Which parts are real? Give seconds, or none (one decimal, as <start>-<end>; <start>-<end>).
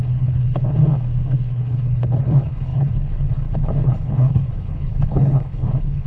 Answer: 0.8-1.4